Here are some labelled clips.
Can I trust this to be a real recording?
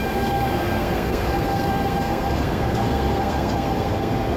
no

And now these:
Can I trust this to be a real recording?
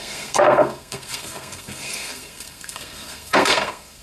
no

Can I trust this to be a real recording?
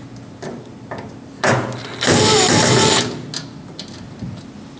yes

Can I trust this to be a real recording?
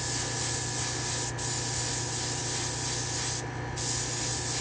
yes